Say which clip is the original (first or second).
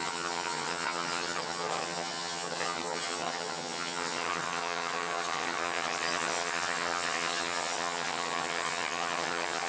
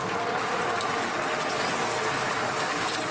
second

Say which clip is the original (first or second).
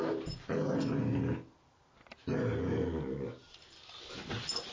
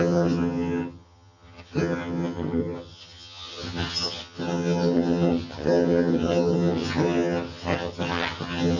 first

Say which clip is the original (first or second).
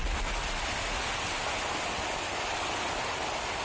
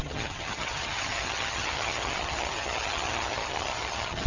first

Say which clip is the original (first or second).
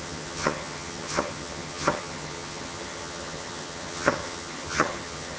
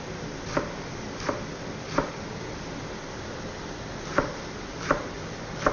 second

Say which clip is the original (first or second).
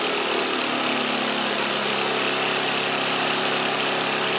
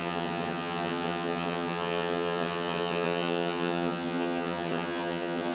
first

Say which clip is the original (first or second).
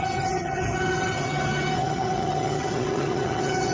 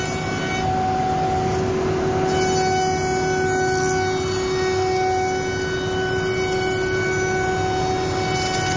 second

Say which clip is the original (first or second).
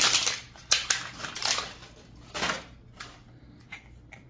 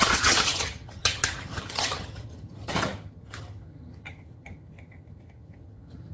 first